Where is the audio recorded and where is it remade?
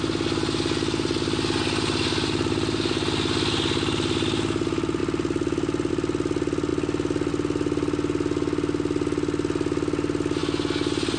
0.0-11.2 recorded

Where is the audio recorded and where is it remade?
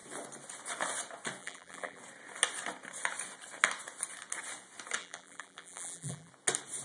0.0-1.4 recorded; 1.4-2.0 remade; 2.0-5.0 recorded; 5.0-6.3 remade; 6.3-6.8 recorded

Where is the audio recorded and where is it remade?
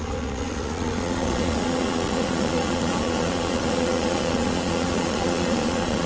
0.0-6.1 remade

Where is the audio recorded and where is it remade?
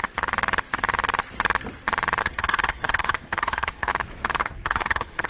0.0-2.2 recorded; 2.2-3.9 remade; 3.9-4.4 recorded; 4.4-5.3 remade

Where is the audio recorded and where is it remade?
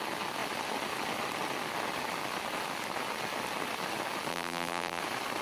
0.0-4.3 recorded; 4.3-5.0 remade; 5.0-5.4 recorded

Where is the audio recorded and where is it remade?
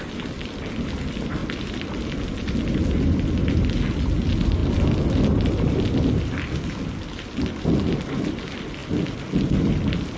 0.0-10.2 recorded